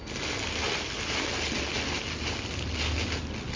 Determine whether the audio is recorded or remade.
recorded